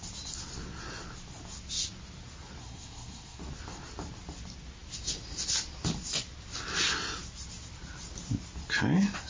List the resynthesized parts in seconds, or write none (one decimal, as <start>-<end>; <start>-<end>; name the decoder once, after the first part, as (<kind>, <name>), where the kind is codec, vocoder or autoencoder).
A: 2.6-3.4 (codec, SNAC)